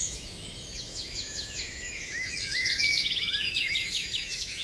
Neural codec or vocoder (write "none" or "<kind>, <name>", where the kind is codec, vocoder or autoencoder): autoencoder, DAC-VAE